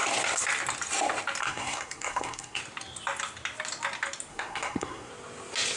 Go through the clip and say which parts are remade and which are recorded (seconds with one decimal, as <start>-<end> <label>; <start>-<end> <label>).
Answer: 0.0-1.4 recorded; 1.4-2.6 remade; 2.6-4.3 recorded; 4.3-5.1 remade; 5.1-5.8 recorded